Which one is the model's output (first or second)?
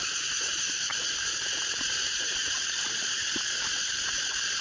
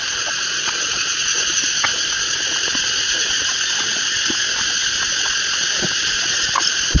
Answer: first